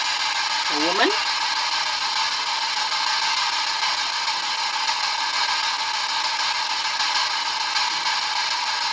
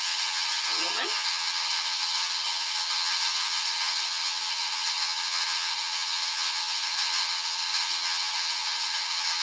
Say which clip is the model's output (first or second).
second